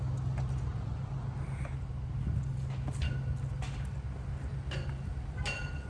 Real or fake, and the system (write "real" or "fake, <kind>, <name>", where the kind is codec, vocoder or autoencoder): real